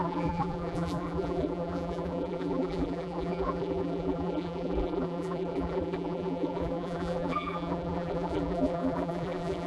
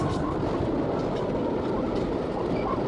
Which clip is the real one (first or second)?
second